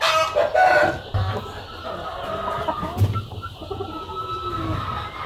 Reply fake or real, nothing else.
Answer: real